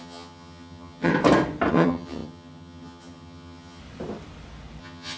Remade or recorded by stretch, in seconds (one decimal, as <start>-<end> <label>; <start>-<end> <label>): 0.0-1.1 remade; 1.1-1.7 recorded; 1.7-3.8 remade; 3.8-4.8 recorded; 4.8-5.2 remade